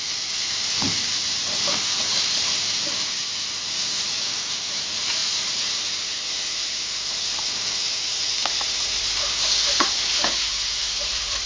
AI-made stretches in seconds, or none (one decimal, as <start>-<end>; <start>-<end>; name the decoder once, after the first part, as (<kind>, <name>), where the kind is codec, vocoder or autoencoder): none